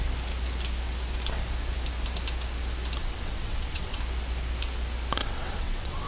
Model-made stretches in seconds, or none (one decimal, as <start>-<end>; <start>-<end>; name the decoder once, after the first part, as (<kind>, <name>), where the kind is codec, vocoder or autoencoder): 3.0-4.0 (vocoder, WaveNeXt); 5.2-6.1